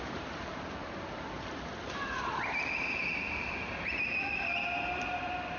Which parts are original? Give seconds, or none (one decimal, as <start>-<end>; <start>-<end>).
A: 0.0-5.6